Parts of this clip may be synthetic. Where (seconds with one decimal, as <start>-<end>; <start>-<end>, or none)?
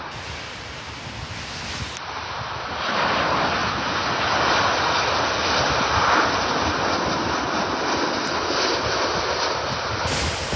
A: 3.6-4.3